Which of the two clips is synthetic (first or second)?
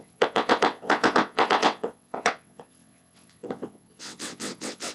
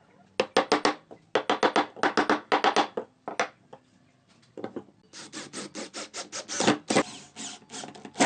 first